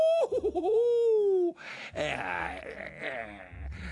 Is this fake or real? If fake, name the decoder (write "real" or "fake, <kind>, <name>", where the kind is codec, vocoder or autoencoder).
real